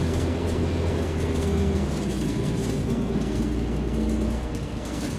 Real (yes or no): no